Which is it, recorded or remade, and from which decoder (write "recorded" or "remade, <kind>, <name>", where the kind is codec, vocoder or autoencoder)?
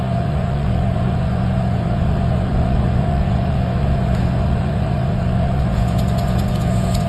remade, vocoder, Vocos